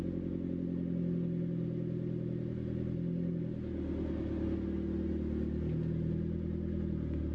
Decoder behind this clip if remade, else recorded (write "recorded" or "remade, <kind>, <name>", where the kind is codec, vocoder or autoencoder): recorded